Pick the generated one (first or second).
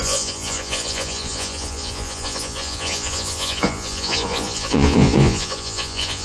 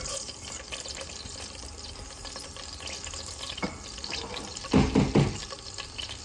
first